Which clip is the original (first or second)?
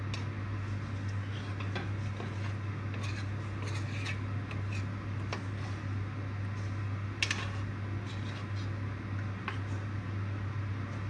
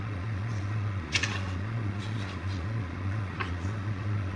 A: first